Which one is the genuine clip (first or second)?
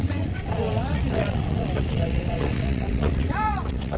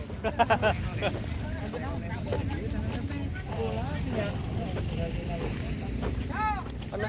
second